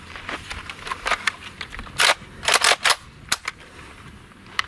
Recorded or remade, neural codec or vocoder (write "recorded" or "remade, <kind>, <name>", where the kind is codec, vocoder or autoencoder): recorded